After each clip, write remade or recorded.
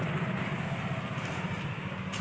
recorded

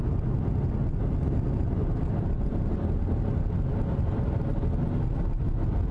recorded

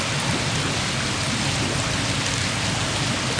recorded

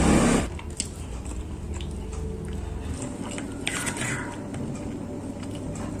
recorded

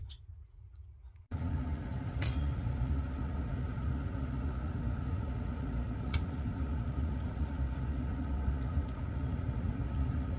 remade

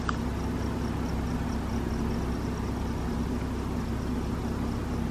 recorded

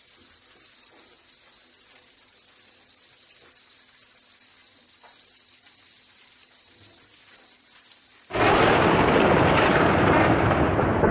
recorded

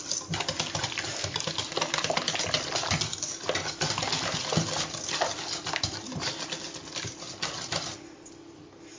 recorded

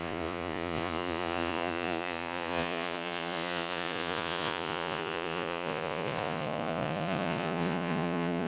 remade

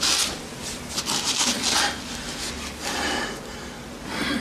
recorded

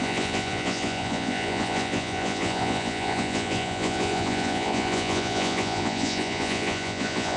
remade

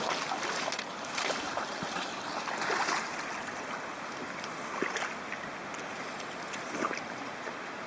recorded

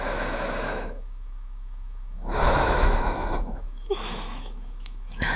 remade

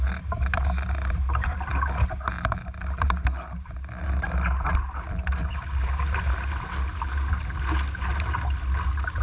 recorded